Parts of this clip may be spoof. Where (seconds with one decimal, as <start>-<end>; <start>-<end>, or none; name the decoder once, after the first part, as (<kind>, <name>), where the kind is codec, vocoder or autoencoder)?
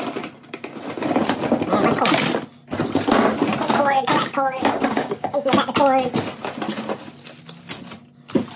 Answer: 3.6-5.6 (codec, DAC)